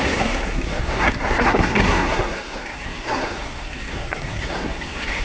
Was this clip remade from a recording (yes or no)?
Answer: yes